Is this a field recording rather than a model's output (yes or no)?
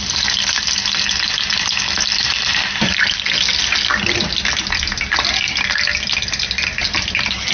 yes